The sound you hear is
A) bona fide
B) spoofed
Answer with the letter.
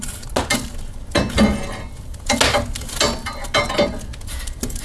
A